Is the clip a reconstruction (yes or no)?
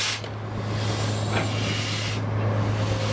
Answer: no